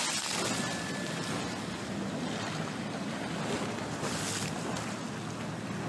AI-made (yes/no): no